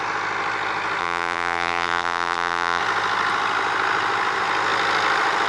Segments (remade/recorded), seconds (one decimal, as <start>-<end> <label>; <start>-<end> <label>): 0.0-1.0 recorded; 1.0-2.8 remade; 2.8-5.5 recorded